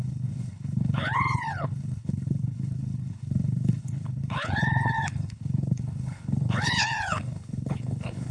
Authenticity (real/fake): fake